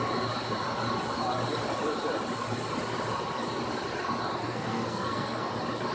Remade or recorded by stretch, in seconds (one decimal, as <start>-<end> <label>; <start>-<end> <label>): 0.0-4.4 recorded; 4.4-5.5 remade; 5.5-5.9 recorded